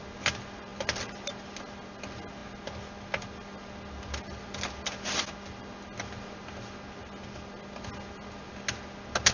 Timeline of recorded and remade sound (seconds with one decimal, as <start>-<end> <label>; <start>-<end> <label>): 0.0-9.3 recorded

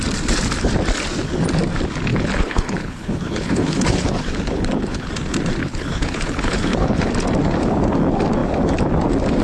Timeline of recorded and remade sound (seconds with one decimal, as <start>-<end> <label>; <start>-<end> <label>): 0.0-2.1 recorded; 2.1-5.1 remade; 5.1-5.6 recorded; 5.6-7.1 remade; 7.1-9.4 recorded